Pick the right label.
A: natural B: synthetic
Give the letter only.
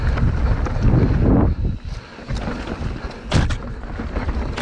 A